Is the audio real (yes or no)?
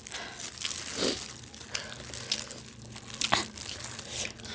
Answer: yes